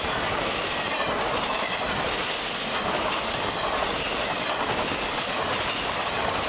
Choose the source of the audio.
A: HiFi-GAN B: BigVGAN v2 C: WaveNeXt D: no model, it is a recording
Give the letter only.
B